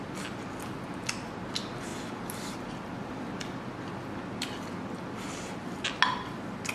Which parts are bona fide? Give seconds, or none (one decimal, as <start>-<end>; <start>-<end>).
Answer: 0.0-6.7